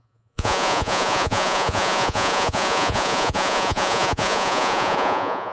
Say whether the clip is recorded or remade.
remade